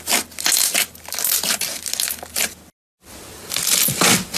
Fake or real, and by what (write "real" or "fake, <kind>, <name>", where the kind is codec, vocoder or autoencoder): real